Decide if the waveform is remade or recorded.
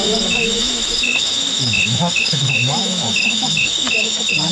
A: remade